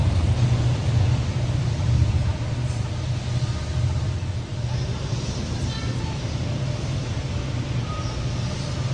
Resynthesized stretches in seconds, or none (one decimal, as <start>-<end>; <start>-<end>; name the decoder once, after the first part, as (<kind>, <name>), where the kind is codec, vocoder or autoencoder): 0.8-3.6 (vocoder, BigVGAN v2)